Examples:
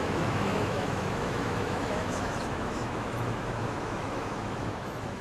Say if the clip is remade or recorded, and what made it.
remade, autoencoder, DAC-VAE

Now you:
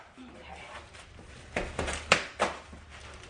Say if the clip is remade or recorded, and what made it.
recorded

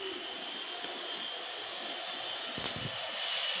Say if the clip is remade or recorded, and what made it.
recorded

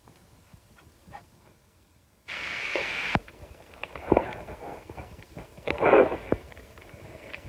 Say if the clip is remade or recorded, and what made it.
remade, codec, SNAC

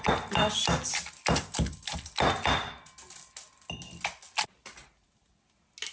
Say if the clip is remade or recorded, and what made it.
recorded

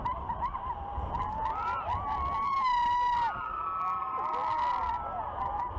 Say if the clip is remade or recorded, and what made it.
recorded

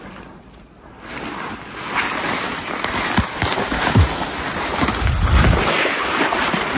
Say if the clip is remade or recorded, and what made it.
recorded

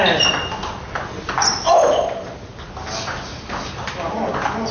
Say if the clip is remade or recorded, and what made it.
recorded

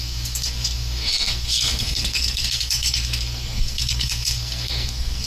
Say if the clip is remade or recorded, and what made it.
remade, codec, SNAC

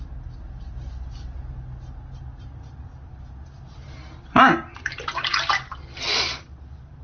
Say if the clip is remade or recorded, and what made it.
recorded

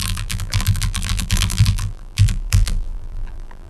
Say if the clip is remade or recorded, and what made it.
remade, vocoder, BigVGAN v2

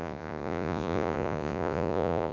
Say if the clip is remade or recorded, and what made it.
remade, vocoder, Vocos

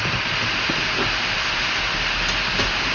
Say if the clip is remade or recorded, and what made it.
recorded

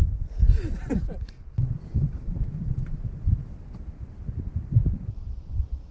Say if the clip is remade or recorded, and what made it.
recorded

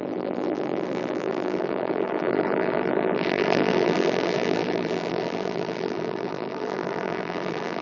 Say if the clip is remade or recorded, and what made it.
remade, vocoder, BigVGAN v2